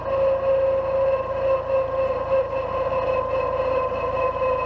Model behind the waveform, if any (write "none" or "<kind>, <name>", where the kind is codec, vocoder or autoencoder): none